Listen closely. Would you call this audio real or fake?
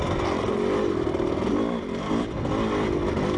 real